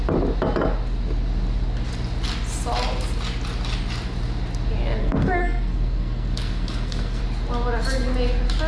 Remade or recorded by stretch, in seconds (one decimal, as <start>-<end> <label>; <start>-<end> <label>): 0.0-5.0 recorded; 5.0-7.2 remade; 7.2-8.7 recorded